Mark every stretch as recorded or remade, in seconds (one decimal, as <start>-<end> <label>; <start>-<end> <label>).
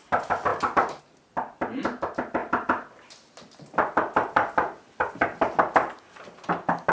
0.0-2.4 recorded; 2.4-6.5 remade; 6.5-6.9 recorded